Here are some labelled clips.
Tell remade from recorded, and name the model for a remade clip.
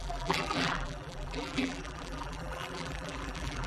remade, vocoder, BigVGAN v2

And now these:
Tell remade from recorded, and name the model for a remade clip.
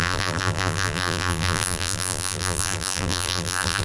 remade, vocoder, BigVGAN v2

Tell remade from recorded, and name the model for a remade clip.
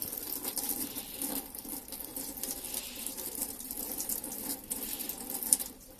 recorded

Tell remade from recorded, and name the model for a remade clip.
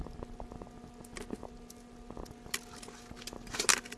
recorded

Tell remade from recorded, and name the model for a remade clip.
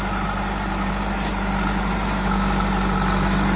recorded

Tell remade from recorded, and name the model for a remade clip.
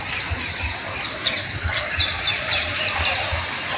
recorded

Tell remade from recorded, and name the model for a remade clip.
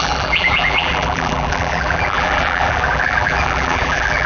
remade, vocoder, BigVGAN v2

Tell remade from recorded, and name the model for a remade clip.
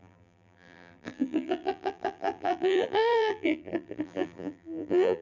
remade, vocoder, BigVGAN v2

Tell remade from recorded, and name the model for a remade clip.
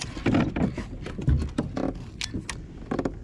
recorded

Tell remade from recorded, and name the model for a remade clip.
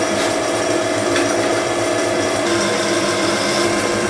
remade, vocoder, BigVGAN v2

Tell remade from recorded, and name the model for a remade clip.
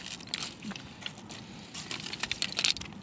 recorded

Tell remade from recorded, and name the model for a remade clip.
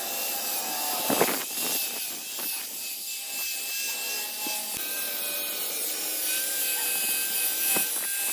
recorded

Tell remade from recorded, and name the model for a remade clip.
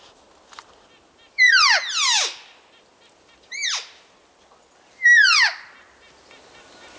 recorded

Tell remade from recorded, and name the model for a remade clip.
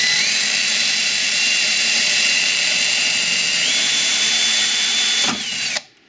remade, vocoder, BigVGAN v2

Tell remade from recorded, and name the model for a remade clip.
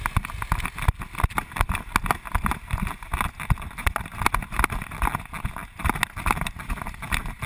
recorded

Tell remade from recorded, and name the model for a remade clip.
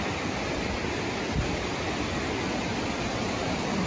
recorded